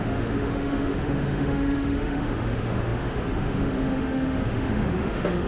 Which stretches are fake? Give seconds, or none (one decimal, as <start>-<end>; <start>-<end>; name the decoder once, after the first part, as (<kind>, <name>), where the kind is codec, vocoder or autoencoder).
0.0-5.5 (autoencoder, DAC-VAE)